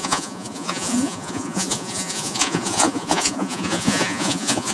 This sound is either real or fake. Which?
fake